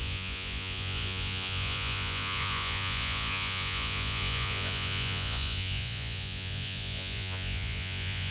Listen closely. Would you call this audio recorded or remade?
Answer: remade